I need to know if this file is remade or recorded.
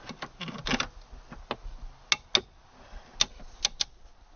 recorded